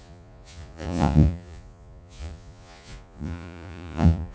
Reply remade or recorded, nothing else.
remade